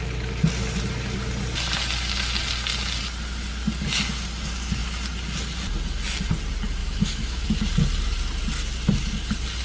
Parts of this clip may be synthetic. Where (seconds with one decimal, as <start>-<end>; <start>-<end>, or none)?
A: 6.8-7.6